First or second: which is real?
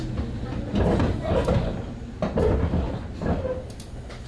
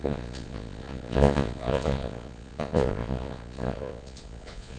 first